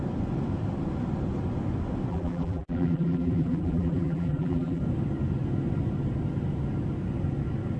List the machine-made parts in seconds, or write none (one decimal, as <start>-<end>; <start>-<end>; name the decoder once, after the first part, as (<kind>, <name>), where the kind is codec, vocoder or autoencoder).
2.1-4.8 (vocoder, BigVGAN v2)